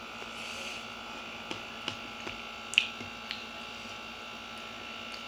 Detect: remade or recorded recorded